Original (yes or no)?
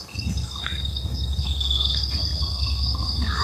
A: no